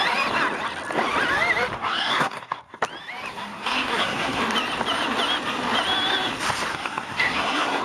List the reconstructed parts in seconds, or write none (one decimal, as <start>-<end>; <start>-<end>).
1.8-2.8; 3.3-4.4; 6.7-7.8